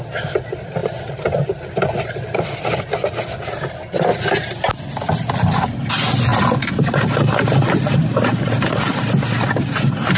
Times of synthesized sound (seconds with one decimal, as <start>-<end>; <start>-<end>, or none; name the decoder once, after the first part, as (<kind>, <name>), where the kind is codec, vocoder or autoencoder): none